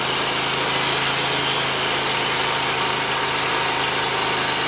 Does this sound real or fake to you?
real